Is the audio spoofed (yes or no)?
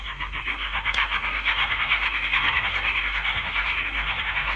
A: yes